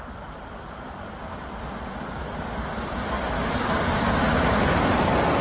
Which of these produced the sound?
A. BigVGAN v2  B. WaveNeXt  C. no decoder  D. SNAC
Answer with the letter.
C